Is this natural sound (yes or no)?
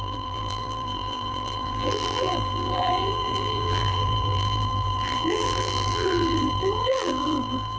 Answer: no